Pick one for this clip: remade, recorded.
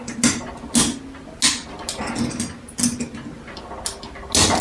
recorded